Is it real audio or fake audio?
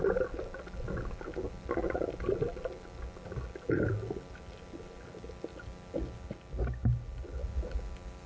real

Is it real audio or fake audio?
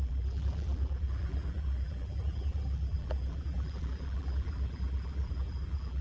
fake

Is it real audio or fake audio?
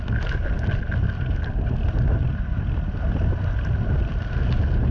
real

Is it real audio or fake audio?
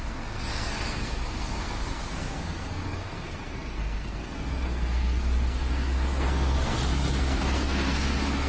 fake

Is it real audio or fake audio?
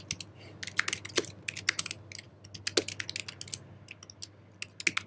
real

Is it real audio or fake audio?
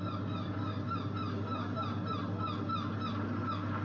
real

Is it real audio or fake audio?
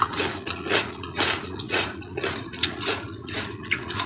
fake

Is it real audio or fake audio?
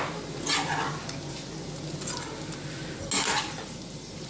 real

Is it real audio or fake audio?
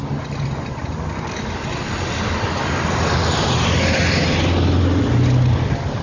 real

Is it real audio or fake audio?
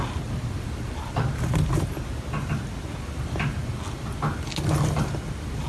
real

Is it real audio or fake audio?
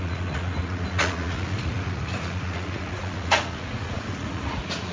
fake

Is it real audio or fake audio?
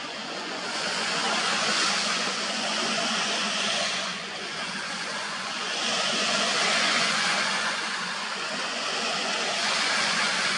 fake